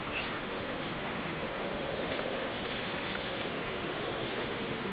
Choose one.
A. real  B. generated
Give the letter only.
B